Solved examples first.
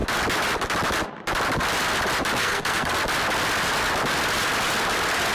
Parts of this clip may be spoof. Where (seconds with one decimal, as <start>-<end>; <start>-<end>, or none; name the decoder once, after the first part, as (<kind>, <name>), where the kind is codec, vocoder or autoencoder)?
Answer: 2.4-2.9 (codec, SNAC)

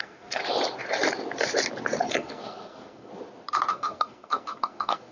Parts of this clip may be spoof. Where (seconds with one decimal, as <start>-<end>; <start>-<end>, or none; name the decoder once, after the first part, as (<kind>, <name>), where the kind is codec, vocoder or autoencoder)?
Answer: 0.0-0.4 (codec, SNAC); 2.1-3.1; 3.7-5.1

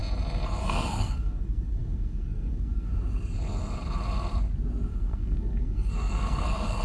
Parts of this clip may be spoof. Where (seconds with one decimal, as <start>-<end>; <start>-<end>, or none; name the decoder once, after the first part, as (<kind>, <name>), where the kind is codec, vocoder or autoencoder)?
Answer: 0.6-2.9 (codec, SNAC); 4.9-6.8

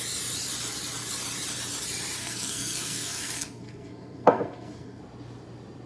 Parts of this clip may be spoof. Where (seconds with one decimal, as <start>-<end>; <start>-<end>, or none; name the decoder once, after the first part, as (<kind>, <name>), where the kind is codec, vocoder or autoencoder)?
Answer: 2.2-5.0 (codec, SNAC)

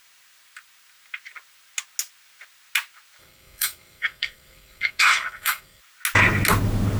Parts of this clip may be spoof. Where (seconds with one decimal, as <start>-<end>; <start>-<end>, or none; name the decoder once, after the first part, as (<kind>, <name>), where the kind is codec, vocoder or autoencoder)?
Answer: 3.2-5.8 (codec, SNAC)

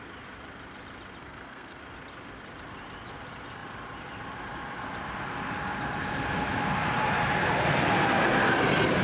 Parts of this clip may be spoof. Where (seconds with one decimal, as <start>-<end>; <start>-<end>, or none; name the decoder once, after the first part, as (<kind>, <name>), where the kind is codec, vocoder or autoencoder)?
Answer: 1.2-1.8 (codec, SNAC)